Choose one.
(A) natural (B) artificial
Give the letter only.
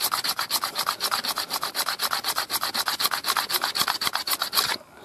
A